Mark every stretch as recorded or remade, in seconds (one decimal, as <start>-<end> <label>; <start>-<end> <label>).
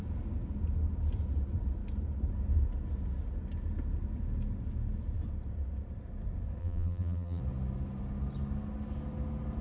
0.0-6.6 recorded; 6.6-7.4 remade; 7.4-9.6 recorded